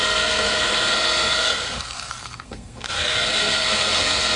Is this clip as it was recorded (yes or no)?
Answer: no